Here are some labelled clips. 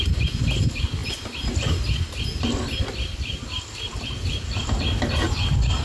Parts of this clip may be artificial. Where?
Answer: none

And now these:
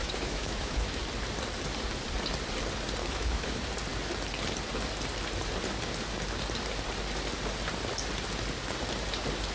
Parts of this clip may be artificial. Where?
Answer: 0.0-1.0 (autoencoder, DAC-VAE); 3.0-3.5

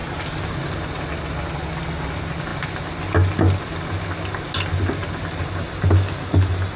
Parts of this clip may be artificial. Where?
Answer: none

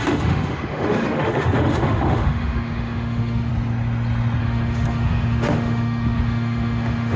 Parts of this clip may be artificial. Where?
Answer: 0.0-3.5 (autoencoder, DAC-VAE); 4.4-7.2